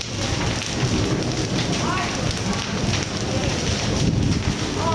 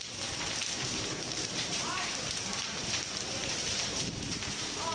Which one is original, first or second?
first